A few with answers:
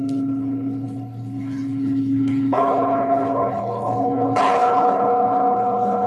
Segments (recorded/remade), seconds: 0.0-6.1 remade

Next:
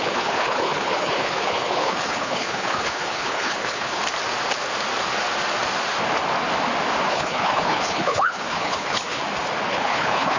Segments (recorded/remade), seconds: 0.0-4.0 remade; 4.0-7.1 recorded; 7.1-9.2 remade; 9.2-9.7 recorded; 9.7-10.4 remade

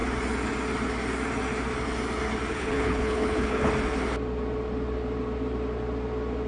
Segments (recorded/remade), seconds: 0.0-2.5 recorded; 2.5-3.7 remade; 3.7-6.5 recorded

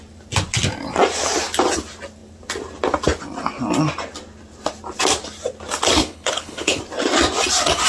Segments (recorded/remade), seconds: 0.0-6.0 recorded; 6.0-6.8 remade; 6.8-7.9 recorded

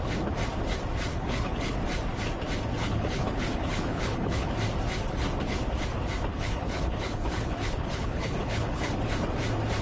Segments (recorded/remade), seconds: 0.0-1.1 recorded; 1.1-1.8 remade; 1.8-2.8 recorded; 2.8-4.5 remade; 4.5-6.3 recorded; 6.3-8.9 remade; 8.9-9.8 recorded

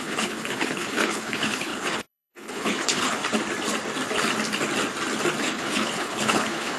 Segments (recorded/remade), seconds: 0.0-3.2 remade; 3.2-5.4 recorded; 5.4-6.8 remade

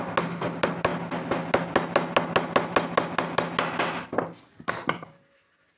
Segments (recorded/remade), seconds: 0.0-5.8 recorded

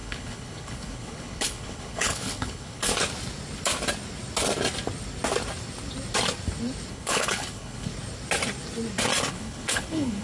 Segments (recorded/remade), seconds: 0.0-2.9 remade; 2.9-6.9 recorded; 6.9-7.9 remade; 7.9-9.3 recorded; 9.3-10.2 remade